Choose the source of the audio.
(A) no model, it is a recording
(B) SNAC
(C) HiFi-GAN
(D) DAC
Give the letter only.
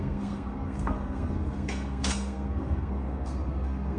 B